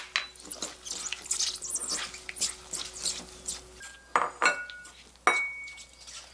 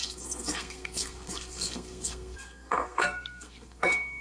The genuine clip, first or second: first